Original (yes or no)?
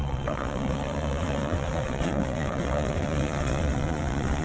no